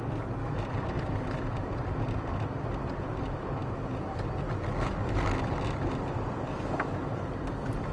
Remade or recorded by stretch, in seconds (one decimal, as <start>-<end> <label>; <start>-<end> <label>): 0.0-0.4 remade; 0.4-0.9 recorded; 0.9-3.6 remade; 3.6-6.1 recorded; 6.1-7.9 remade